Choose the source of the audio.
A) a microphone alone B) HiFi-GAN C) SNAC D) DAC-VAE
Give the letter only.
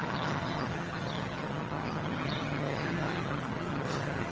B